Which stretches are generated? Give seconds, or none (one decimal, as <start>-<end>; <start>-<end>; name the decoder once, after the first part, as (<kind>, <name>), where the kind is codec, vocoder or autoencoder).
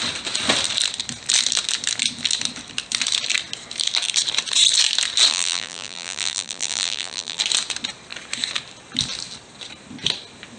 5.3-7.4 (vocoder, BigVGAN v2)